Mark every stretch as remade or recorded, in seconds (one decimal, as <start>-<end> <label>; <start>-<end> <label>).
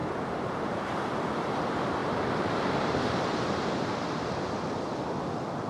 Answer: 0.0-0.9 remade; 0.9-2.0 recorded; 2.0-4.3 remade; 4.3-5.7 recorded